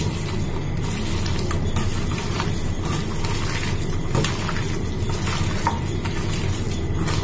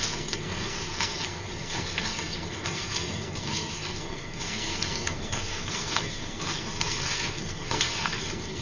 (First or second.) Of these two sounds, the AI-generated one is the second